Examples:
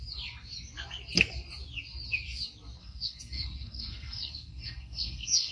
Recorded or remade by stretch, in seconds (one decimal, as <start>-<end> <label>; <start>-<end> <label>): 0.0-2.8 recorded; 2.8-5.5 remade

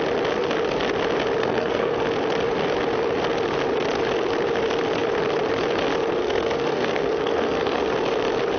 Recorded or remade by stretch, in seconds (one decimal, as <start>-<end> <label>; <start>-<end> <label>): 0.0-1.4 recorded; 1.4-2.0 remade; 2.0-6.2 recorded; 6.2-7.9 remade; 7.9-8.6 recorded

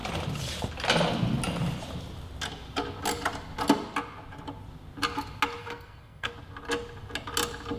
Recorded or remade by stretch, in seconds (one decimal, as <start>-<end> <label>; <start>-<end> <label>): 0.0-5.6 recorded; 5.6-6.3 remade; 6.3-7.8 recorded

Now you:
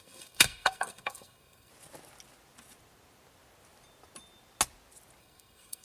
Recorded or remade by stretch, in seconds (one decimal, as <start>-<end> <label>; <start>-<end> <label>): 0.0-1.7 remade; 1.7-5.2 recorded; 5.2-5.8 remade

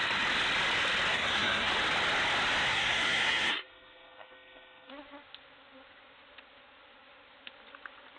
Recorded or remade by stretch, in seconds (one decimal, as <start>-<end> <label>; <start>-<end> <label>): 0.0-1.1 recorded; 1.1-1.7 remade; 1.7-2.7 recorded; 2.7-4.9 remade; 4.9-8.2 recorded

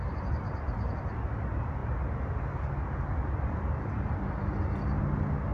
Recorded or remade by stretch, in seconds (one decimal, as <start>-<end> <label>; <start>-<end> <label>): 0.0-5.5 recorded